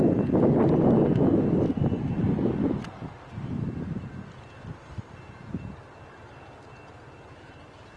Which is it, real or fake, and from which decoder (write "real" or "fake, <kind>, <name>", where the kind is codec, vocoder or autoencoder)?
real